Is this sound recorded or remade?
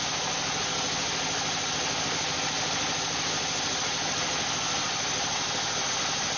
recorded